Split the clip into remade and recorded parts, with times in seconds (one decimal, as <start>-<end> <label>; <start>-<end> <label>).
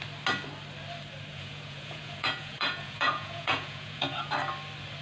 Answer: 0.0-1.3 recorded; 1.3-4.3 remade; 4.3-5.0 recorded